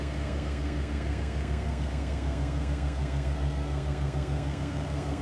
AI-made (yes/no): yes